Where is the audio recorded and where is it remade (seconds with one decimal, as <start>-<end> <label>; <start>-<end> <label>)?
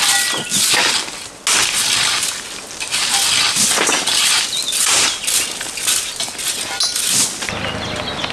0.0-8.3 recorded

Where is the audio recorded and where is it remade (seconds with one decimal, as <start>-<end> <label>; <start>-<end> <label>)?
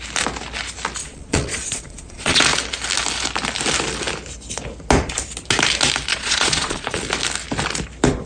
0.0-1.0 recorded; 1.0-2.4 remade; 2.4-6.1 recorded; 6.1-7.0 remade; 7.0-8.3 recorded